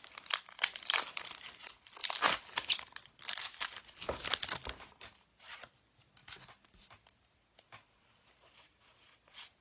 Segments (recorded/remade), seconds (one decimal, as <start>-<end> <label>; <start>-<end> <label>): 0.0-9.6 recorded